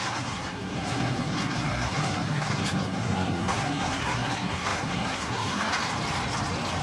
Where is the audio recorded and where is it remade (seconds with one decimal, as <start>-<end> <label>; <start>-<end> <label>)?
0.0-5.7 remade; 5.7-6.8 recorded